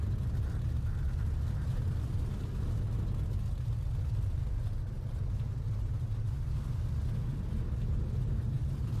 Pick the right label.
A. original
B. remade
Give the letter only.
A